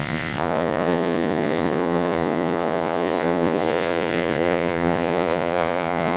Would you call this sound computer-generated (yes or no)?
yes